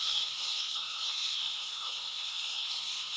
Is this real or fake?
fake